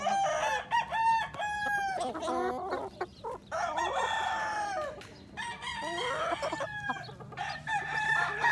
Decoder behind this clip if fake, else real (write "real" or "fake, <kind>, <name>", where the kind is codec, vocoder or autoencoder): real